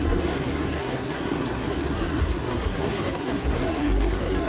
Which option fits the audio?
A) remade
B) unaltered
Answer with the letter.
A